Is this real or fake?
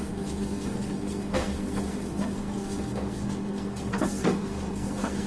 fake